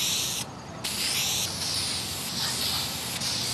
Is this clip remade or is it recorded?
recorded